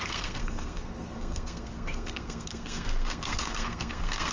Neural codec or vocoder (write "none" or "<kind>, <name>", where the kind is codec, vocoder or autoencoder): codec, SNAC